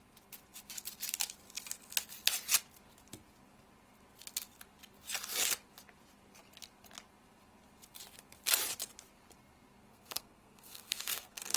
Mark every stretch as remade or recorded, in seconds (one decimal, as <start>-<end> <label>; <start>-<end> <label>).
0.0-9.9 recorded; 9.9-11.6 remade